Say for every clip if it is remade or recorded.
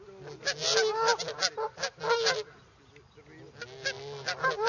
recorded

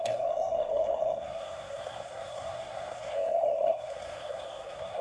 remade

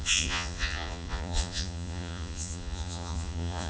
remade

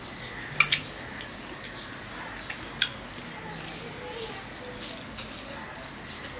recorded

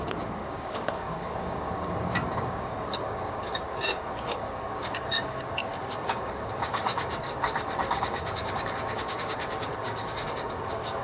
remade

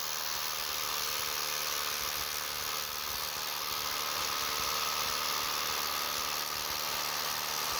recorded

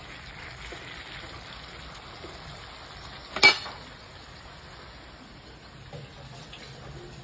recorded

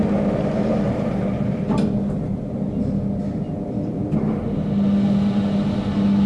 recorded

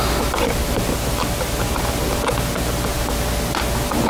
recorded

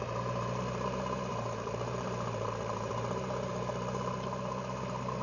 remade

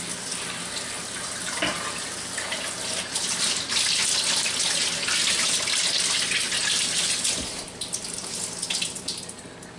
recorded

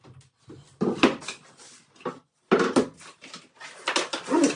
recorded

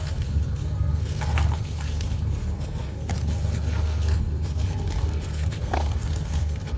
remade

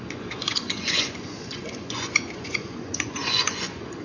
remade